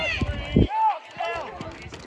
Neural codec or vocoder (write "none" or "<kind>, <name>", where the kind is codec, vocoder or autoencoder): none